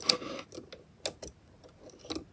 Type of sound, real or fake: real